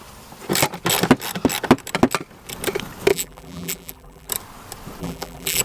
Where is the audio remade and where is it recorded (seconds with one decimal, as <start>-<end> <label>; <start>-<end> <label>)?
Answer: 0.0-3.1 recorded; 3.1-4.3 remade; 4.3-5.0 recorded; 5.0-5.6 remade